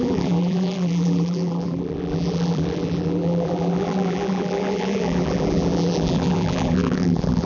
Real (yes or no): no